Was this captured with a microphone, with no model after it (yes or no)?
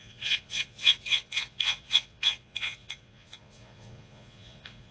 no